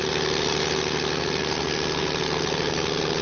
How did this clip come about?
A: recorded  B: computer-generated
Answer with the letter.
A